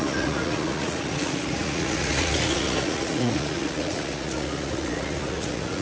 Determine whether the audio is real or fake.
fake